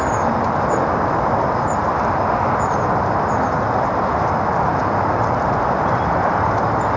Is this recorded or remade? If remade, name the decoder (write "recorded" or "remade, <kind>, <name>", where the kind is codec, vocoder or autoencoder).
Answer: recorded